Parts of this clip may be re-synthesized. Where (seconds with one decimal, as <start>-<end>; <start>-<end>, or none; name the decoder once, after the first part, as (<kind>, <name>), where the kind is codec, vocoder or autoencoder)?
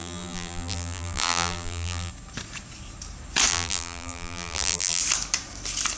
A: 0.0-2.1 (vocoder, BigVGAN v2); 3.5-5.0